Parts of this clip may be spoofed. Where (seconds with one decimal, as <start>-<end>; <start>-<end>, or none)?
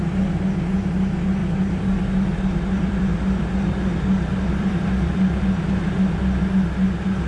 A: 1.4-5.8